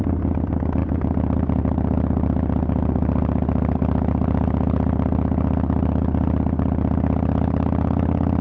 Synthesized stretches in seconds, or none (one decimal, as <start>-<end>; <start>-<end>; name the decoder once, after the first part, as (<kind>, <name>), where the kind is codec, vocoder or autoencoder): none